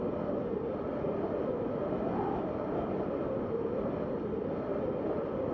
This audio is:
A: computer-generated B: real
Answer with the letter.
B